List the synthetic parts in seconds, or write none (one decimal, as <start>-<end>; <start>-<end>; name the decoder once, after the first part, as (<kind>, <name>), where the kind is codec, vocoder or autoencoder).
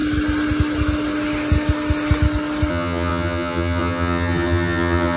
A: 2.7-5.2 (vocoder, HiFi-GAN)